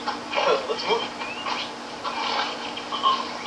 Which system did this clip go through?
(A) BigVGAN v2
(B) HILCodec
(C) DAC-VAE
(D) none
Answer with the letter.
D